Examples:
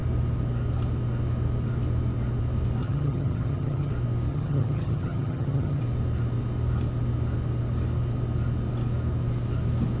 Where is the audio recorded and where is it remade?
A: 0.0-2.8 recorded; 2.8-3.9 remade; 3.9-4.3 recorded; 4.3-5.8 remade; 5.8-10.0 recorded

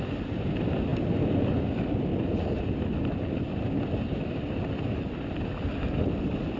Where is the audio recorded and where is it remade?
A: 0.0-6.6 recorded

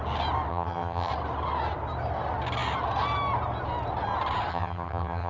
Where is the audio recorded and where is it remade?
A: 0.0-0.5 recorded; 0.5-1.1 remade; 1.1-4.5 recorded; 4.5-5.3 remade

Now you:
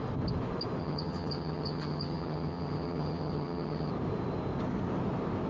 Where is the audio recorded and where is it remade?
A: 0.0-0.8 recorded; 0.8-3.9 remade; 3.9-5.5 recorded

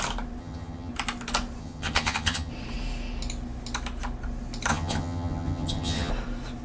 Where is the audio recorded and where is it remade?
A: 0.0-0.4 recorded; 0.4-0.9 remade; 0.9-1.6 recorded; 1.6-2.5 remade; 2.5-4.7 recorded; 4.7-6.1 remade; 6.1-6.6 recorded

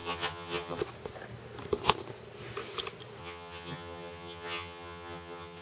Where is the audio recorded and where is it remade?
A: 0.0-0.8 remade; 0.8-3.2 recorded; 3.2-5.6 remade